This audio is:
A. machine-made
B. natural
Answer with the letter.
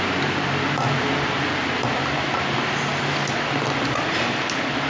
B